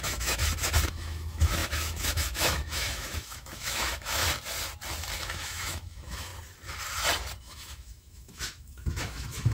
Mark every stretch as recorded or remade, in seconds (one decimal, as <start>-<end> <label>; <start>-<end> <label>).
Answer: 0.0-0.4 remade; 0.4-0.9 recorded; 0.9-4.2 remade; 4.2-5.2 recorded; 5.2-6.3 remade; 6.3-7.4 recorded; 7.4-9.5 remade